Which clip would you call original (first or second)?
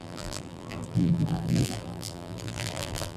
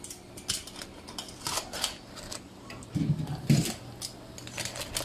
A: second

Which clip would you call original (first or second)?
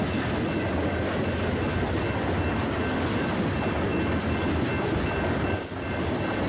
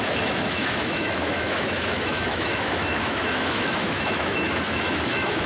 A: first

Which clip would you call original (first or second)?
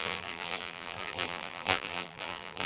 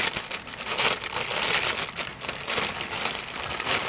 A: second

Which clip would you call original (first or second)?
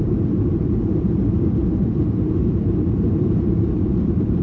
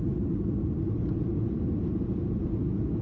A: second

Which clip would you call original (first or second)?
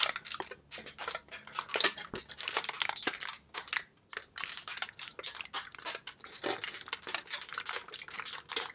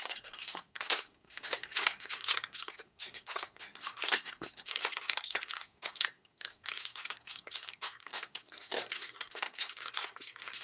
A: first